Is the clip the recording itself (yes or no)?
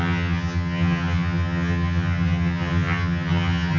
no